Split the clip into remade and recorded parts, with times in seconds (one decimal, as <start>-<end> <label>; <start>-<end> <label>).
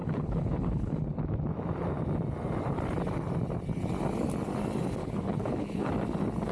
0.0-1.2 remade; 1.2-5.0 recorded; 5.0-5.9 remade; 5.9-6.5 recorded